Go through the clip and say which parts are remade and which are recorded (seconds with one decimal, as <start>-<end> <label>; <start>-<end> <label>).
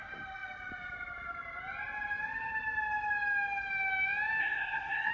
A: 0.0-4.4 recorded; 4.4-5.1 remade